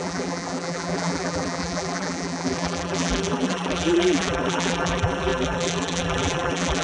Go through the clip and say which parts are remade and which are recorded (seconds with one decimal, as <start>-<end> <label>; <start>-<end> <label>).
0.0-6.8 remade